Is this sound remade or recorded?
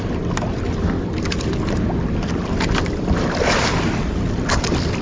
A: recorded